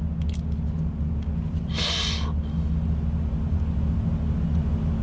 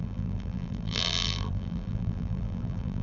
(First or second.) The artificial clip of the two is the second